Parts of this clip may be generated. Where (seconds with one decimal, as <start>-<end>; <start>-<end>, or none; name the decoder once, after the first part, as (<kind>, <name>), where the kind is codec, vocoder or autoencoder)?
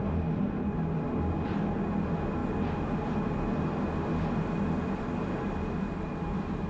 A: none